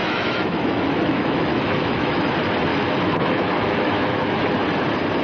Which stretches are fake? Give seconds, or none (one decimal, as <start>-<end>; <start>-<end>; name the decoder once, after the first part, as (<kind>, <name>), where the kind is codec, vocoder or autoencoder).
0.0-2.3 (autoencoder, DAC-VAE); 2.7-4.5